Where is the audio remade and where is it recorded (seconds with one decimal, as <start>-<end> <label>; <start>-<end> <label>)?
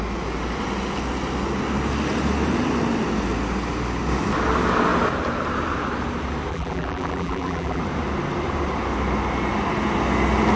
0.0-6.5 recorded; 6.5-7.8 remade; 7.8-10.6 recorded